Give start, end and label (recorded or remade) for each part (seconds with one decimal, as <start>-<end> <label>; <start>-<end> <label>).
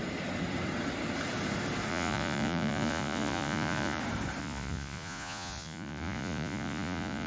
0.0-1.9 recorded; 1.9-4.0 remade; 4.0-4.4 recorded; 4.4-7.3 remade